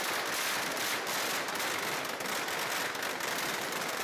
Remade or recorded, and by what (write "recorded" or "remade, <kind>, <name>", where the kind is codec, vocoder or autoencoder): recorded